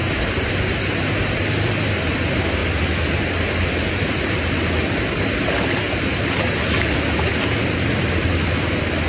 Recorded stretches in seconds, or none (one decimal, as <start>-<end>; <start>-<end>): 0.0-9.1